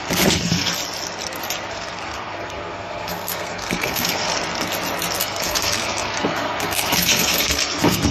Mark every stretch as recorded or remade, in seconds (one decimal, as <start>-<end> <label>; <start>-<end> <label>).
0.0-0.7 remade; 0.7-1.7 recorded; 1.7-4.3 remade; 4.3-5.2 recorded; 5.2-8.1 remade